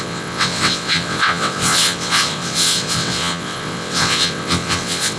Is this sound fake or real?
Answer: fake